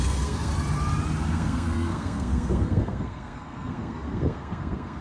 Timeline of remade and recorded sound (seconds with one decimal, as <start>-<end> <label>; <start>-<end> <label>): 0.0-0.5 remade; 0.5-1.3 recorded; 1.3-5.0 remade